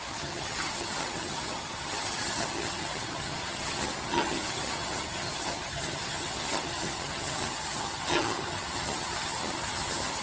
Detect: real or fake fake